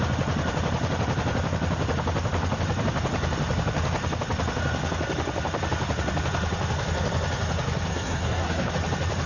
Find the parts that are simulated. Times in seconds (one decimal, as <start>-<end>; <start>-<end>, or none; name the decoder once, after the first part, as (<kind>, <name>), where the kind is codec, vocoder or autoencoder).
7.9-8.7 (codec, SNAC)